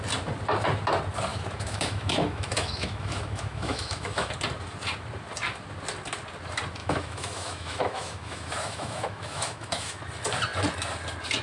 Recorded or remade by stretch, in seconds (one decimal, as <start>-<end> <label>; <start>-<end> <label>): 0.0-1.3 recorded; 1.3-4.3 remade; 4.3-6.8 recorded; 6.8-10.0 remade; 10.0-11.4 recorded